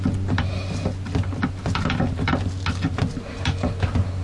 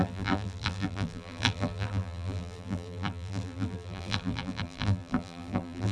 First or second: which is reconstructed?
second